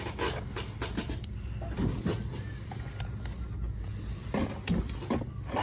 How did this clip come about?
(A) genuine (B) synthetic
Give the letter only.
A